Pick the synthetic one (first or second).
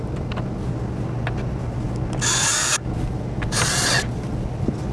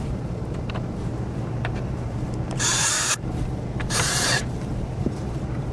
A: second